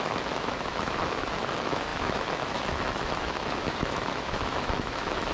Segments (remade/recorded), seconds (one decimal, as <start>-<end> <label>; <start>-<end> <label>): 0.0-5.3 remade